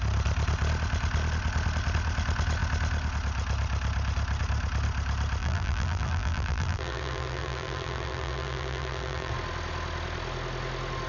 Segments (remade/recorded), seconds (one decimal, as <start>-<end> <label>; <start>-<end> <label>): 0.0-5.4 recorded; 5.4-9.3 remade; 9.3-11.1 recorded